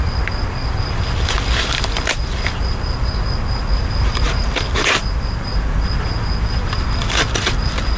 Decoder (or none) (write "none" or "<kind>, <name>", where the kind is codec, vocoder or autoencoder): vocoder, BigVGAN v2